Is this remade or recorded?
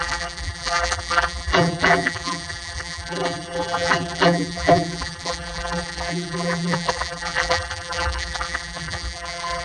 remade